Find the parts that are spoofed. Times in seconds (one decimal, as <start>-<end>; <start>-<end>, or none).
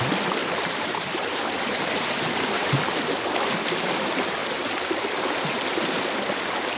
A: 0.4-3.0; 4.4-5.2